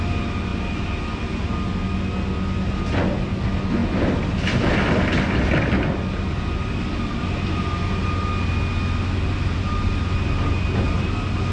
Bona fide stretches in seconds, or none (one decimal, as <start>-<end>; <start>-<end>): 0.0-11.5